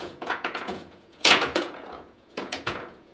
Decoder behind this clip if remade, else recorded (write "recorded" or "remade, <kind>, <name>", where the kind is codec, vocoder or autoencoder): remade, vocoder, Vocos